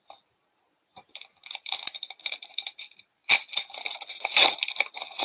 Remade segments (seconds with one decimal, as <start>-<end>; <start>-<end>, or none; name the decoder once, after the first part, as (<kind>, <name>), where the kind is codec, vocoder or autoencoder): 0.0-3.2 (vocoder, BigVGAN v2)